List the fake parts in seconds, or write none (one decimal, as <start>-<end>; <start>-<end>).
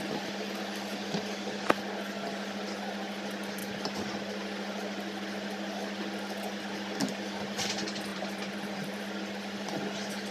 8.1-9.0